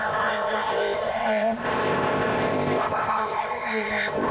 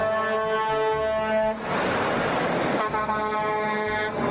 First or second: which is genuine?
second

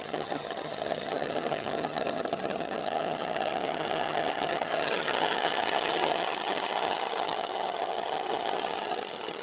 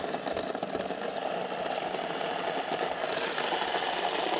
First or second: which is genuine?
second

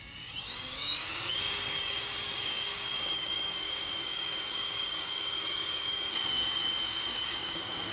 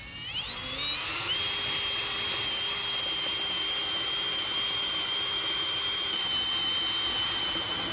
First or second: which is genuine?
second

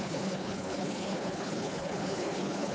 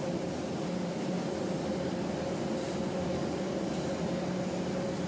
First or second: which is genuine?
second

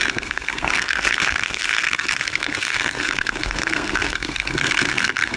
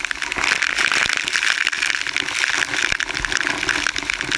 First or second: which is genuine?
second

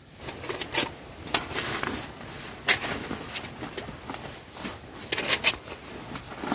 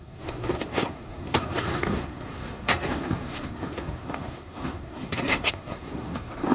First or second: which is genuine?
first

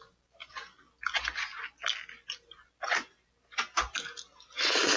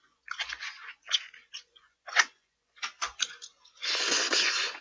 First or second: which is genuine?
first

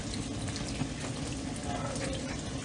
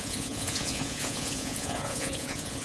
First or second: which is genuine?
first